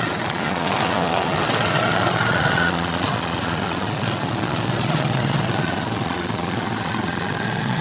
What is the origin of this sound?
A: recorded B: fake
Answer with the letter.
B